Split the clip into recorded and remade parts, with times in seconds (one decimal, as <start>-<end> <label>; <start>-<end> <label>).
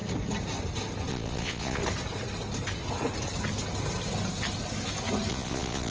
0.0-1.1 recorded; 1.1-1.8 remade; 1.8-5.3 recorded; 5.3-5.9 remade